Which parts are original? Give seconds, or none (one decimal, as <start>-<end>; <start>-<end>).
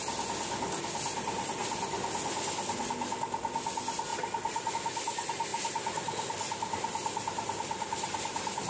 0.0-4.1; 4.7-5.5